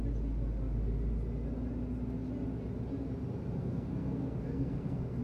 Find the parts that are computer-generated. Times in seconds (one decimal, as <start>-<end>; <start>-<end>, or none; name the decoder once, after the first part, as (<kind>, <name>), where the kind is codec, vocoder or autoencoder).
3.6-5.2 (codec, SNAC)